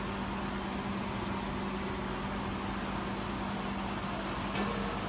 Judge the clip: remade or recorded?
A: recorded